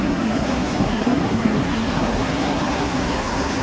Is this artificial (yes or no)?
yes